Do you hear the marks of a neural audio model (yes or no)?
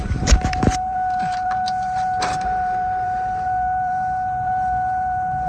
yes